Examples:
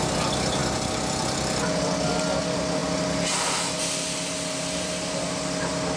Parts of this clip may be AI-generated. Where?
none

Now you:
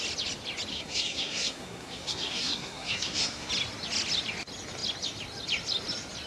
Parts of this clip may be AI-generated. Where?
0.7-3.5 (codec, SNAC)

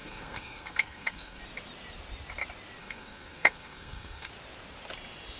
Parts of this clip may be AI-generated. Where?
0.0-1.4 (codec, SNAC); 2.8-4.3

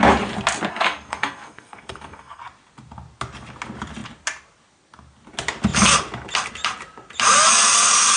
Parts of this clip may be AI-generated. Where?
0.7-2.4 (codec, SNAC)